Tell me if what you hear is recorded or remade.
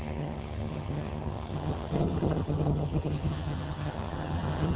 remade